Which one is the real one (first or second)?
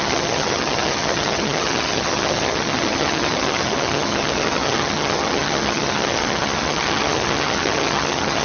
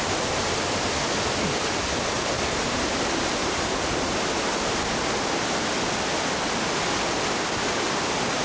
second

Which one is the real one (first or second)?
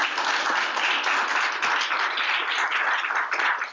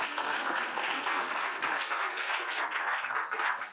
first